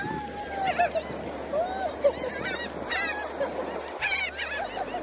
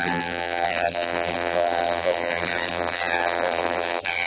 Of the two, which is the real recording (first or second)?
first